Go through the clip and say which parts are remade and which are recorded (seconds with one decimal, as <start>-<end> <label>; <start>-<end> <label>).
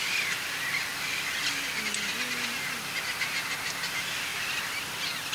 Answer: 0.0-5.3 recorded